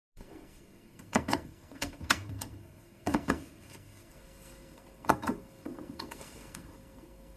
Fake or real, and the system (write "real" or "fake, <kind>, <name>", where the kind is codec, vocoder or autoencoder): fake, codec, SNAC